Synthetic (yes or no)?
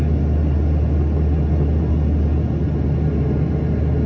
no